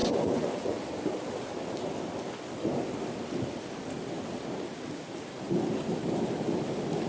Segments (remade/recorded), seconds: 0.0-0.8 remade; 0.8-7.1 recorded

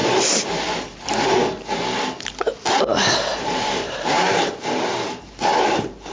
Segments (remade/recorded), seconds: 0.0-0.5 remade; 0.5-3.3 recorded; 3.3-6.1 remade

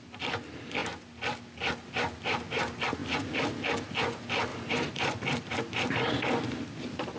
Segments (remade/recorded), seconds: 0.0-4.5 recorded; 4.5-5.6 remade; 5.6-7.2 recorded

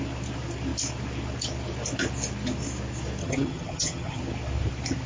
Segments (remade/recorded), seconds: 0.0-3.2 recorded; 3.2-4.2 remade; 4.2-5.1 recorded

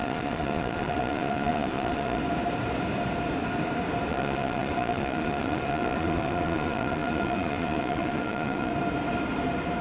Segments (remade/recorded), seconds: 0.0-2.2 remade; 2.2-4.1 recorded; 4.1-8.7 remade; 8.7-9.8 recorded